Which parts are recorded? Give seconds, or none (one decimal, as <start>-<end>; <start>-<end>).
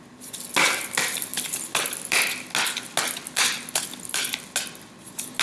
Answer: 0.0-5.4